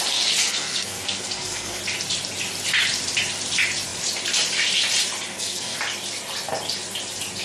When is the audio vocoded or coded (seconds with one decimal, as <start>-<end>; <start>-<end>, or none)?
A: 0.4-1.8; 5.3-5.8